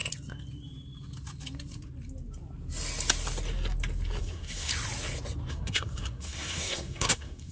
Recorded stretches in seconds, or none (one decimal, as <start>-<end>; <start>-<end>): 0.0-4.2; 4.7-5.5